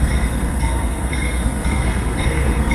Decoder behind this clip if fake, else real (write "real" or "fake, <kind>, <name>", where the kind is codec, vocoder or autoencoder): fake, codec, SNAC